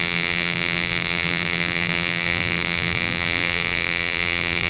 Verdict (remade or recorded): remade